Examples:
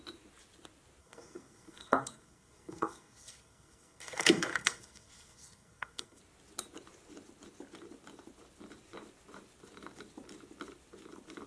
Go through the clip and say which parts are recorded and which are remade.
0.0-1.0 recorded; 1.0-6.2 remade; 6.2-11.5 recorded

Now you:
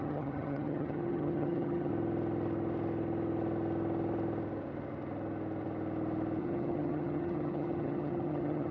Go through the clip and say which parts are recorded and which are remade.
0.0-1.9 remade; 1.9-6.4 recorded; 6.4-8.7 remade

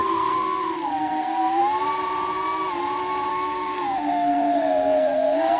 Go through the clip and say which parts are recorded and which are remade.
0.0-1.6 remade; 1.6-3.3 recorded; 3.3-5.6 remade

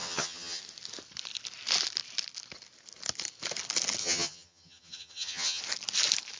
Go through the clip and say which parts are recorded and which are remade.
0.0-0.6 remade; 0.6-4.0 recorded; 4.0-5.6 remade; 5.6-6.4 recorded

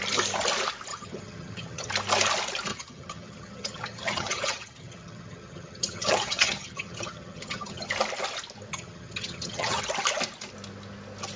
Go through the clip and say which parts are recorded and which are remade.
0.0-0.9 recorded; 0.9-1.9 remade; 1.9-2.7 recorded; 2.7-7.9 remade; 7.9-8.7 recorded; 8.7-9.8 remade; 9.8-11.4 recorded